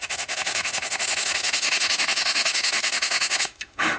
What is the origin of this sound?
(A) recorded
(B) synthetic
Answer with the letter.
B